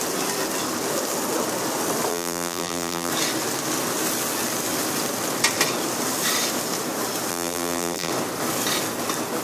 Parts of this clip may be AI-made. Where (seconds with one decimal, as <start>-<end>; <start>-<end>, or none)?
2.1-3.1; 7.3-8.1